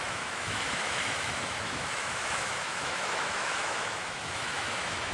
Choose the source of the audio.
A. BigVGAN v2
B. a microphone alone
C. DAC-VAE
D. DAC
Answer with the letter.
C